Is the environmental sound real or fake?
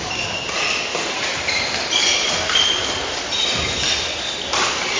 fake